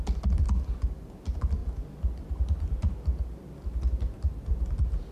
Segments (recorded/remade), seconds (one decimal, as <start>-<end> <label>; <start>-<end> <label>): 0.0-5.1 recorded